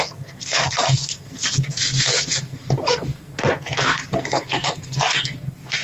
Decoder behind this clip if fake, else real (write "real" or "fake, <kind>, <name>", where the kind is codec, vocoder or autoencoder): fake, codec, SNAC